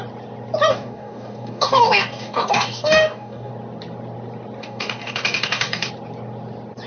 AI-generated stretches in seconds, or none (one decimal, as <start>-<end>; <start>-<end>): 0.7-3.5; 4.6-5.9